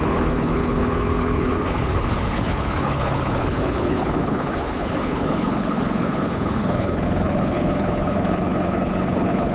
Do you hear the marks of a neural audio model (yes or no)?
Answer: yes